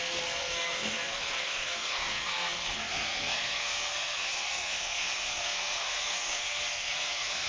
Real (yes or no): no